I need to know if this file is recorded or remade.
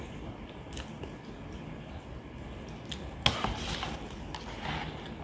recorded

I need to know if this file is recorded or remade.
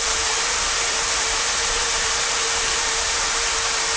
remade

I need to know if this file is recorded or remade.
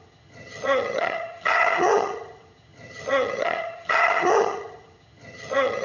remade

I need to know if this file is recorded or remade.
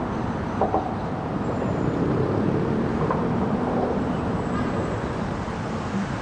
remade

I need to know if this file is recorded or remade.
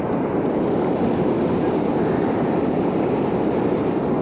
recorded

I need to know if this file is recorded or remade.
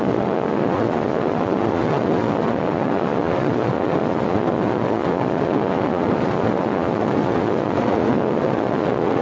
remade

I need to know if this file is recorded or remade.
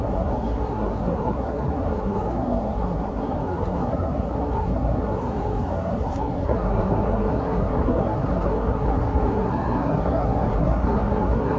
remade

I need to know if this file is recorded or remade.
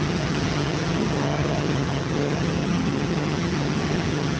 remade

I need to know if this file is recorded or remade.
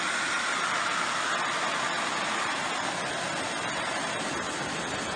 recorded